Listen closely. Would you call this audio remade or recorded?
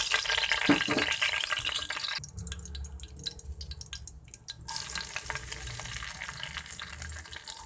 recorded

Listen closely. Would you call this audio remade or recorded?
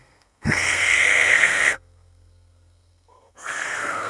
remade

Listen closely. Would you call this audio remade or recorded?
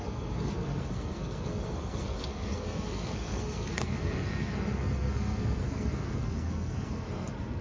remade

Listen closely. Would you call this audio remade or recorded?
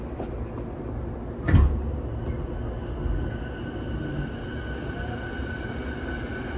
recorded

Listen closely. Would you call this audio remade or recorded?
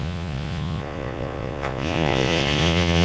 remade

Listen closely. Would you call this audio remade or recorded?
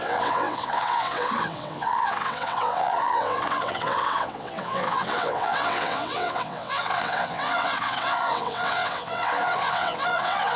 remade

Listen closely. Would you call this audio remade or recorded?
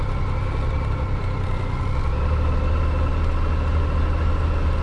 recorded